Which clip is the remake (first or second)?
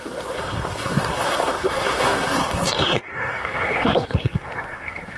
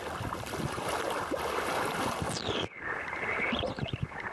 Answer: first